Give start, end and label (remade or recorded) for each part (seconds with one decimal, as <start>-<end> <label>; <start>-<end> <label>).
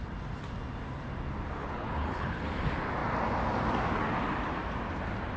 0.0-1.6 recorded; 1.6-2.5 remade; 2.5-5.4 recorded